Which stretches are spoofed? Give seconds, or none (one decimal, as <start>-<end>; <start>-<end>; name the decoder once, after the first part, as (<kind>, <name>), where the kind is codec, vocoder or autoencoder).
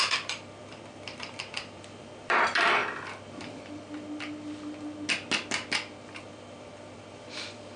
0.0-2.8 (vocoder, BigVGAN v2); 6.2-7.8